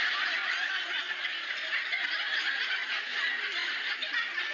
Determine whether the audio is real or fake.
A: real